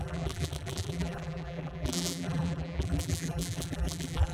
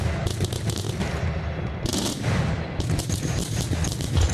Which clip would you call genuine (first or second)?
second